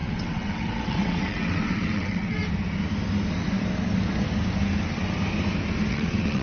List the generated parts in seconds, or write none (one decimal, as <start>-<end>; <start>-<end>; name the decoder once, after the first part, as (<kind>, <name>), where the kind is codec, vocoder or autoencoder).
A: 0.0-2.4 (vocoder, WaveNeXt); 5.9-6.4